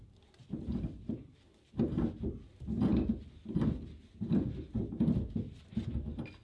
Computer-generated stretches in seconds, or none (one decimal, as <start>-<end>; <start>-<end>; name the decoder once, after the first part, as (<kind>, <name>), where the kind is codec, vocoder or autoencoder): none